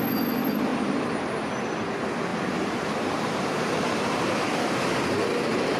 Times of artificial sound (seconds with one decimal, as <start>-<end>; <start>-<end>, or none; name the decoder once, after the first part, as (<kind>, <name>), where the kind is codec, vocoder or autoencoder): 0.7-1.2 (vocoder, BigVGAN v2); 2.3-5.8